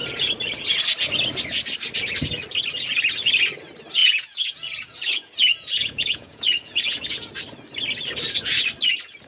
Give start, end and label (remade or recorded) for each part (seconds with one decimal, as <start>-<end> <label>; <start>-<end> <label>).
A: 0.0-4.0 recorded; 4.0-7.3 remade; 7.3-9.3 recorded